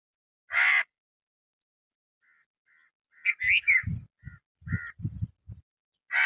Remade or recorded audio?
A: recorded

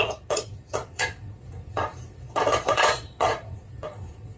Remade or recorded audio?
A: remade